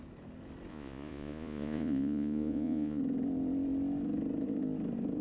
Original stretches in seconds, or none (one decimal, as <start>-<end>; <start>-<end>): 0.0-0.7; 3.0-5.2